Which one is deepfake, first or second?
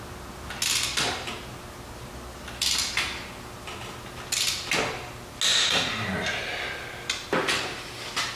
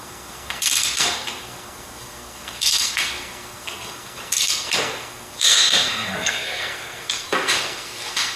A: second